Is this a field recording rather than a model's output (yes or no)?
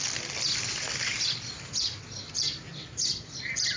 no